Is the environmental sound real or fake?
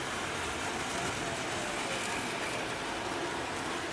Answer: real